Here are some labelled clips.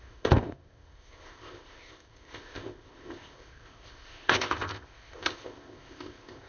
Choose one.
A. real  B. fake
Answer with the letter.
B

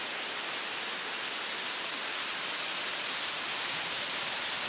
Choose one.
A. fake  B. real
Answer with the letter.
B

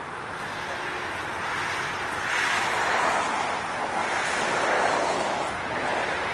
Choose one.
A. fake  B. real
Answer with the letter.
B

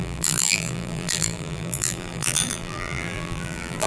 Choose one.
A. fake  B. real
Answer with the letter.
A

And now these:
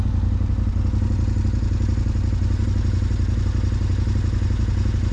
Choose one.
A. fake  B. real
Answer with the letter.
B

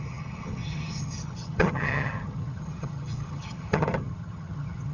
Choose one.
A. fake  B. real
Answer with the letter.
A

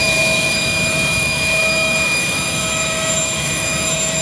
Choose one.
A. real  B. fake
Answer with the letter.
B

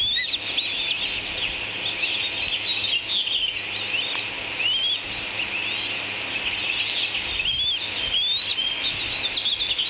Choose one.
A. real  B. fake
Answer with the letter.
A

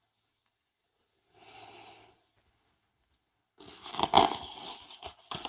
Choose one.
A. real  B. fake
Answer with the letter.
A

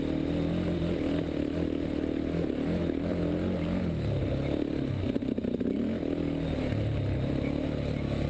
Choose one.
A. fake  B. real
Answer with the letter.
B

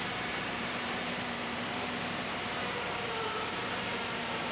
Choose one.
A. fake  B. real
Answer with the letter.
A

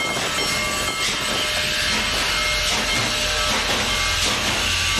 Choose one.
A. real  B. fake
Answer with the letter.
A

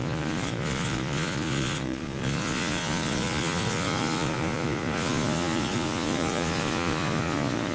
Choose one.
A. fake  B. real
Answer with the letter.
A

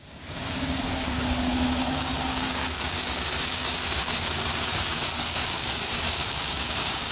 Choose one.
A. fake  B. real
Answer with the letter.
A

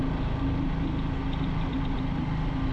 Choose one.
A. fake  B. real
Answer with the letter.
B